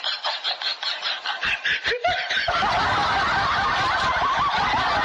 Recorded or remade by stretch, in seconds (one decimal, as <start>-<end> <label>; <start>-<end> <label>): 0.0-0.7 recorded; 0.7-3.7 remade; 3.7-5.0 recorded